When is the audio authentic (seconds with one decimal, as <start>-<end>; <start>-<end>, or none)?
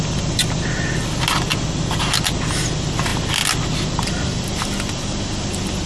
0.0-5.9